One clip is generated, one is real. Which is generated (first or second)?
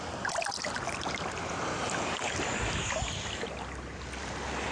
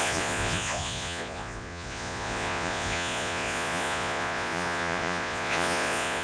second